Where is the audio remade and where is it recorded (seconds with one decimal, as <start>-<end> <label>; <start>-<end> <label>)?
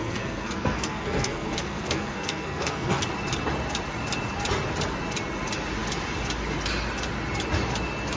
0.0-3.0 remade; 3.0-8.2 recorded